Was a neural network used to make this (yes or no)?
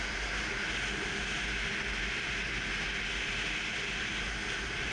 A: no